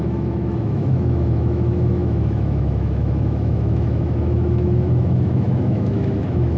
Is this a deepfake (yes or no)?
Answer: yes